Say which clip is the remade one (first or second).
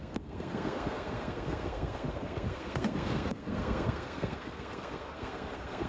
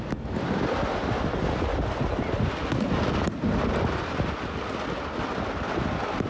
first